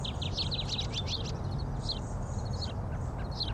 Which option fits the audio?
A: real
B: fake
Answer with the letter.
A